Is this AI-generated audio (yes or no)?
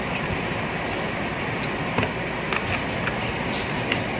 no